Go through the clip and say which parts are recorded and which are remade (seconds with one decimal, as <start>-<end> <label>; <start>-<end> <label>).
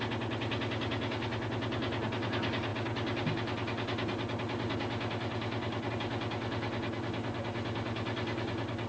0.0-8.9 recorded